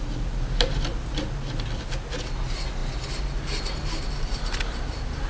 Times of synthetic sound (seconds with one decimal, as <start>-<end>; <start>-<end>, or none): none